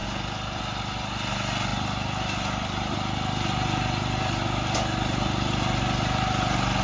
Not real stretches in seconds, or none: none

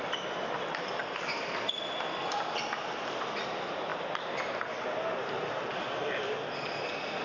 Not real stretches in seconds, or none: none

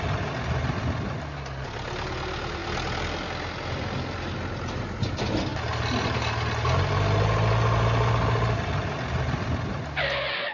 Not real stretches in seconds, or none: none

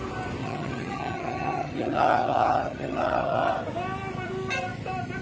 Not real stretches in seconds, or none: 0.4-3.5 (vocoder, HiFi-GAN)